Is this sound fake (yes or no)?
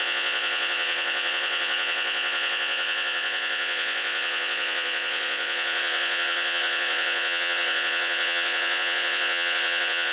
yes